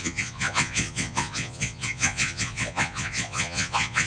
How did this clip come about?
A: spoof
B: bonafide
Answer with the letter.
A